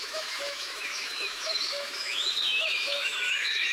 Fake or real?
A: fake